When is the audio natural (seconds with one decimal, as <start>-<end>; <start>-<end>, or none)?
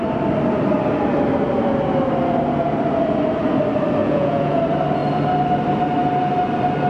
0.0-4.0; 4.6-6.9